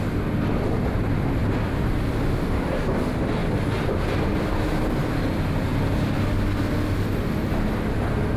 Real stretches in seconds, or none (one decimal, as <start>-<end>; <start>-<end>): 0.0-1.4; 1.9-8.4